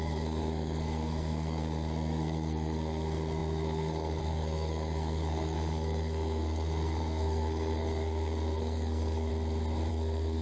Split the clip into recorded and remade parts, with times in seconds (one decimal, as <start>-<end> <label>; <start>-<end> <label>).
0.0-9.3 remade; 9.3-9.9 recorded; 9.9-10.4 remade